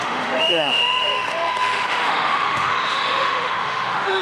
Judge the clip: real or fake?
fake